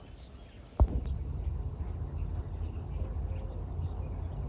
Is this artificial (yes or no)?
no